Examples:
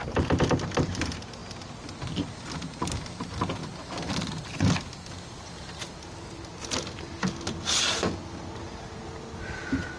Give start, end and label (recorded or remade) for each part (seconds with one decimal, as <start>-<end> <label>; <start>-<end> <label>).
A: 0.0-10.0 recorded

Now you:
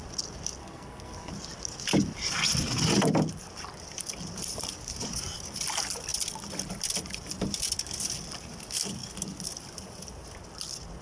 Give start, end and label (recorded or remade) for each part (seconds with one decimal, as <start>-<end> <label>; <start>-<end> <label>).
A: 0.0-0.6 recorded; 0.6-1.3 remade; 1.3-11.0 recorded

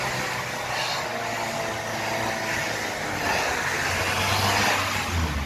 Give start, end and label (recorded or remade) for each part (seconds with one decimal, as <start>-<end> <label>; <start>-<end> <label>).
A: 0.0-5.5 recorded

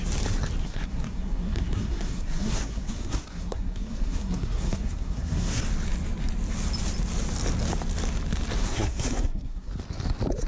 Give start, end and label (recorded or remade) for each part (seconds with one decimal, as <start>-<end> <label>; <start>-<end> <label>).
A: 0.0-0.6 recorded; 0.6-5.6 remade; 5.6-8.6 recorded; 8.6-9.7 remade; 9.7-10.5 recorded

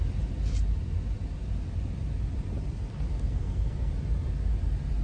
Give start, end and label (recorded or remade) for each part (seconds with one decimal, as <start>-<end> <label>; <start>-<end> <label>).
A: 0.0-3.1 recorded; 3.1-3.9 remade; 3.9-5.0 recorded